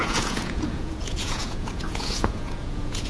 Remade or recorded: remade